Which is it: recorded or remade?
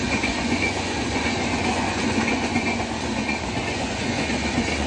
remade